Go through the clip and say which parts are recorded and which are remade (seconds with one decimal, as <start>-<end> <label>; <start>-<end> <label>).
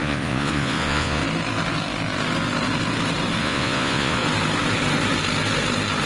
0.0-1.2 remade; 1.2-3.4 recorded; 3.4-4.2 remade; 4.2-6.1 recorded